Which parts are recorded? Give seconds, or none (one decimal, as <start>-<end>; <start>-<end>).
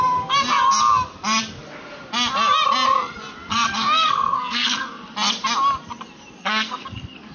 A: 0.0-3.5; 4.9-6.4